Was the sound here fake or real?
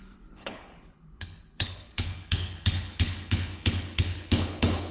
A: fake